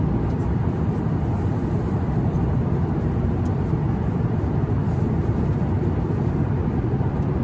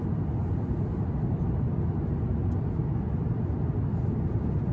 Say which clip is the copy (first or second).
first